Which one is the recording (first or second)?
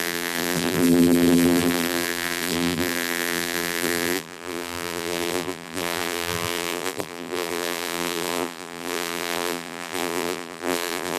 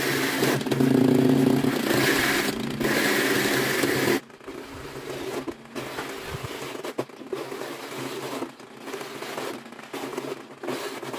second